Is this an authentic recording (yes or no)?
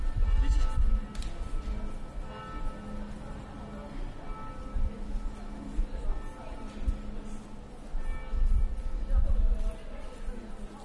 yes